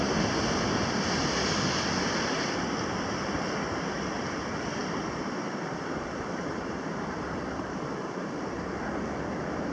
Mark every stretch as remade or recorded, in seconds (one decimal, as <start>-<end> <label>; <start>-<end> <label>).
0.0-4.8 recorded; 4.8-8.9 remade; 8.9-9.7 recorded

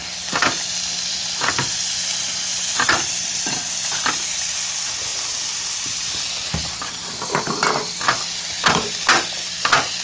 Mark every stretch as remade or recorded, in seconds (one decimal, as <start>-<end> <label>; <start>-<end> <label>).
0.0-1.1 remade; 1.1-2.5 recorded; 2.5-3.3 remade; 3.3-10.0 recorded

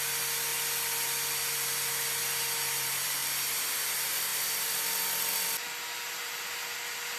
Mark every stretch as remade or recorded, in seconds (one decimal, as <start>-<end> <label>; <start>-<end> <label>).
0.0-7.2 recorded

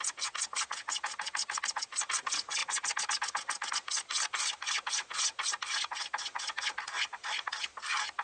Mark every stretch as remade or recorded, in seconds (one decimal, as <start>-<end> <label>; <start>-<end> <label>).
0.0-8.2 recorded

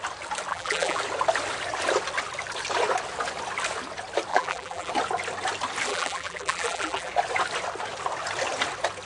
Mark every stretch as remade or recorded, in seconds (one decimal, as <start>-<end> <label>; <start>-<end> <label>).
0.0-0.5 recorded; 0.5-1.0 remade; 1.0-4.3 recorded; 4.3-4.9 remade; 4.9-5.9 recorded; 5.9-7.1 remade; 7.1-9.1 recorded

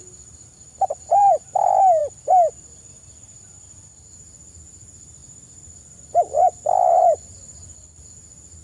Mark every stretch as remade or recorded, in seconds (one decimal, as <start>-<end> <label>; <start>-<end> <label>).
0.0-1.3 remade; 1.3-2.0 recorded; 2.0-2.9 remade; 2.9-5.2 recorded; 5.2-8.1 remade; 8.1-8.6 recorded